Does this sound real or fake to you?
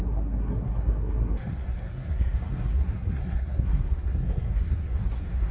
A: fake